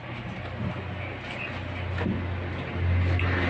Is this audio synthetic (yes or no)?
no